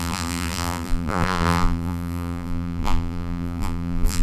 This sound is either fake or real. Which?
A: fake